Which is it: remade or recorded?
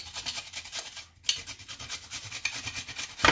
recorded